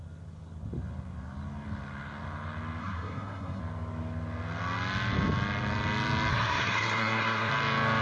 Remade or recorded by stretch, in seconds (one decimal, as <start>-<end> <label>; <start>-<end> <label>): 0.0-2.8 recorded; 2.8-3.6 remade; 3.6-6.3 recorded; 6.3-7.5 remade; 7.5-8.0 recorded